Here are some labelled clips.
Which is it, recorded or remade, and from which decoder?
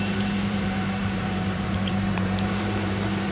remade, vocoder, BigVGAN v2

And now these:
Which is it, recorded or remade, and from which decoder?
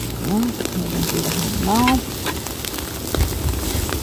recorded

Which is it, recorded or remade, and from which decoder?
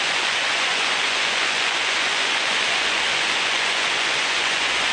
remade, vocoder, Vocos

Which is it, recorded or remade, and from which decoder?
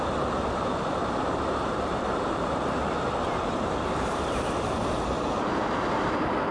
remade, vocoder, BigVGAN v2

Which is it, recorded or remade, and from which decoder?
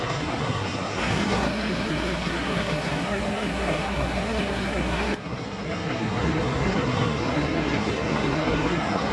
remade, codec, SNAC